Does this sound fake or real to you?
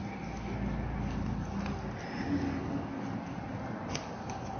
real